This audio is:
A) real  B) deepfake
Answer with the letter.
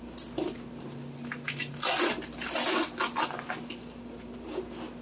A